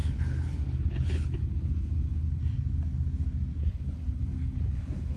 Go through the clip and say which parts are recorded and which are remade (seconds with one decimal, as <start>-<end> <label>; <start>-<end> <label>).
0.0-2.4 remade; 2.4-3.6 recorded; 3.6-5.2 remade